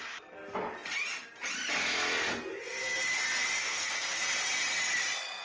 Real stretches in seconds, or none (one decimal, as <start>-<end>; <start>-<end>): 0.0-3.6; 4.2-5.4